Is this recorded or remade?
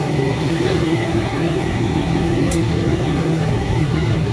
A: remade